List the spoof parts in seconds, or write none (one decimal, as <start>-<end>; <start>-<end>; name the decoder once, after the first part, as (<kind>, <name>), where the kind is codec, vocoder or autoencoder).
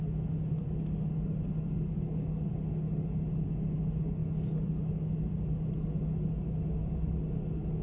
none